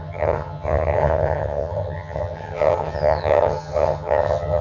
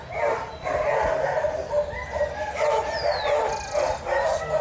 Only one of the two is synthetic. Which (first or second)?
first